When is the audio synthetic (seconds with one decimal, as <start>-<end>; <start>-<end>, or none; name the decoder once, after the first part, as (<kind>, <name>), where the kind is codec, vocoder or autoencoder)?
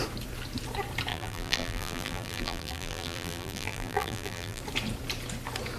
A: 1.1-4.6 (vocoder, BigVGAN v2)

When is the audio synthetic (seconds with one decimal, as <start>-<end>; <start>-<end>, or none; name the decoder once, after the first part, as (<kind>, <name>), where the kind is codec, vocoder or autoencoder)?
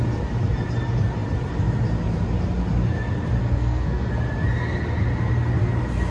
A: 3.4-4.1 (codec, SNAC)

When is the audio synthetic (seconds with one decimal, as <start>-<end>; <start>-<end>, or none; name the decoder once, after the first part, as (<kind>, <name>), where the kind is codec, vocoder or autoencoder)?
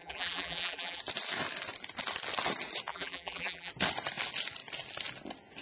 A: 0.0-1.0 (vocoder, BigVGAN v2); 2.9-3.7